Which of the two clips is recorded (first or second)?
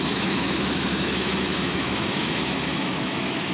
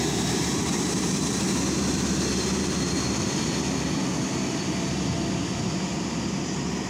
second